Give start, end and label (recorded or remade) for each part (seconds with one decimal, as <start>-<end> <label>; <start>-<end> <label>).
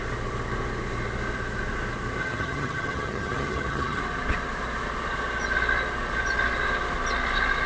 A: 0.0-2.2 recorded; 2.2-4.0 remade; 4.0-7.7 recorded